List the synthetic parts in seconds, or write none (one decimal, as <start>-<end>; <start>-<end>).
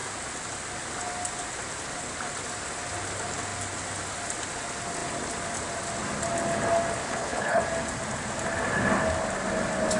7.0-7.6